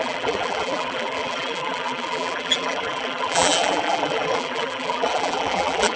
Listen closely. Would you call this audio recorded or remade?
remade